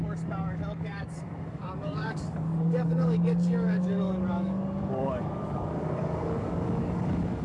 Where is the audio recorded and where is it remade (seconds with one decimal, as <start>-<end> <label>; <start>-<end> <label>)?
0.0-7.4 remade